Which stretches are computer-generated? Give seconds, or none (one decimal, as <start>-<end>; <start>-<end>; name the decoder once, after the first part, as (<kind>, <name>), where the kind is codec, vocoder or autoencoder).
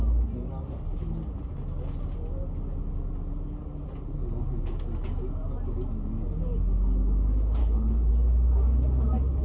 7.6-8.1 (codec, HILCodec)